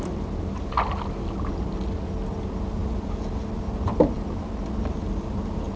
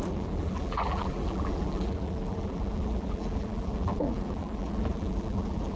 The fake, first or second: second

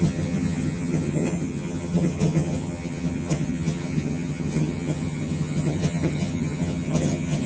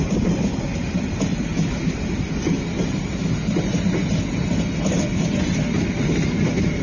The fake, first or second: first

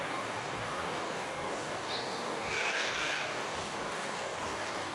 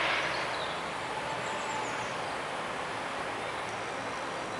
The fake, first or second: first